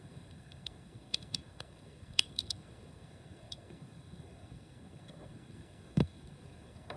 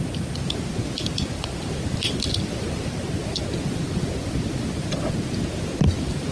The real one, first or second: second